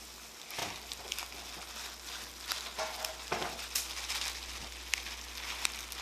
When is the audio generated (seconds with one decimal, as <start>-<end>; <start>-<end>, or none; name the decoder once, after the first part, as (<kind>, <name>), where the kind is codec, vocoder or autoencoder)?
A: none